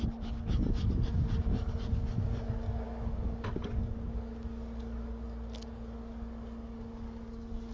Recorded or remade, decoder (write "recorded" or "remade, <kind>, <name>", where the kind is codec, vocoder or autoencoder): remade, codec, DAC